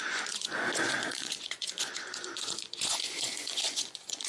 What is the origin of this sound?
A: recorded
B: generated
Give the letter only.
B